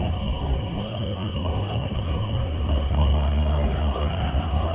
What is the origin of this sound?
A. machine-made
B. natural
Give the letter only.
A